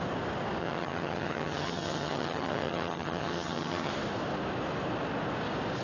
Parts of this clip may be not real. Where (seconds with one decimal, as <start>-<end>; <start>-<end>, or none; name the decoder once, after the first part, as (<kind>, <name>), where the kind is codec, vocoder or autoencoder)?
0.6-3.9 (vocoder, HiFi-GAN)